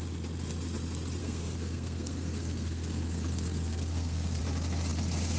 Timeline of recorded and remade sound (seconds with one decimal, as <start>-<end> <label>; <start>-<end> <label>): 0.0-1.2 recorded; 1.2-4.4 remade; 4.4-5.4 recorded